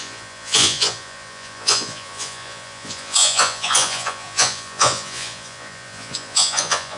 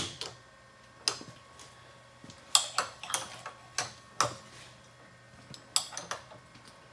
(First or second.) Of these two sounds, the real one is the second